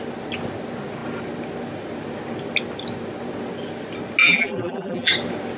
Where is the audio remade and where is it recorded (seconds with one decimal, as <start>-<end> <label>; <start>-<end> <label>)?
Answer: 0.0-4.2 recorded; 4.2-5.1 remade; 5.1-5.6 recorded